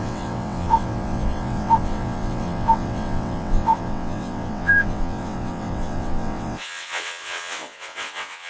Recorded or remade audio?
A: remade